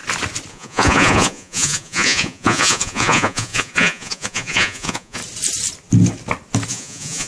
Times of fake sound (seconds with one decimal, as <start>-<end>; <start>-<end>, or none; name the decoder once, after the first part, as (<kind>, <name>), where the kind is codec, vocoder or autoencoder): 0.5-5.2 (vocoder, Vocos); 6.7-7.3